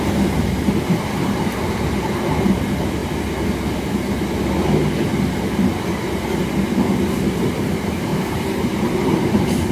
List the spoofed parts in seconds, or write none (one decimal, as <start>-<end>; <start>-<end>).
0.0-3.0; 7.4-9.7